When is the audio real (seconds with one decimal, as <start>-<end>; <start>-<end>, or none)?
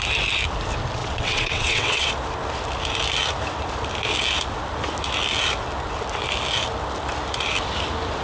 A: 0.0-1.0; 2.1-8.2